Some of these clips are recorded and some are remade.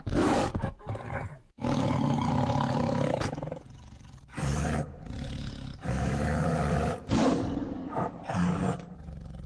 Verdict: remade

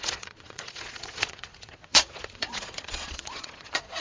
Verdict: remade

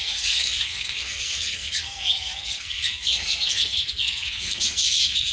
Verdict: remade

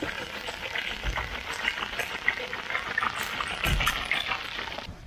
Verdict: recorded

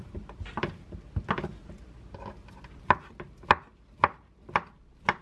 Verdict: recorded